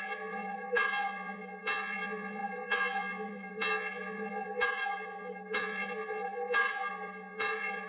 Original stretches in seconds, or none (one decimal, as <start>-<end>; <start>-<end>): none